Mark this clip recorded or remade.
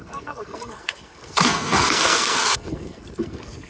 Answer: remade